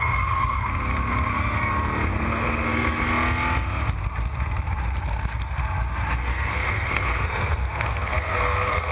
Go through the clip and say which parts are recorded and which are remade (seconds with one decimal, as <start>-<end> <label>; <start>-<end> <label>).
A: 0.0-0.7 remade; 0.7-2.1 recorded; 2.1-3.1 remade; 3.1-5.0 recorded; 5.0-5.6 remade; 5.6-6.3 recorded; 6.3-8.9 remade